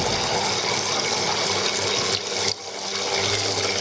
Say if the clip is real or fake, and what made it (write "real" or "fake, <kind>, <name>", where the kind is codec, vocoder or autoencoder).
real